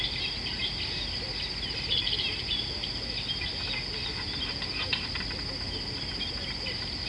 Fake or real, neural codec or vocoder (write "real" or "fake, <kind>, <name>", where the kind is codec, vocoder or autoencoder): real